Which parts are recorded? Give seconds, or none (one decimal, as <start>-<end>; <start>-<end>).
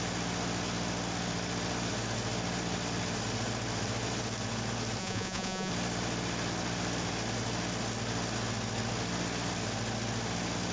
0.0-5.0; 5.7-10.7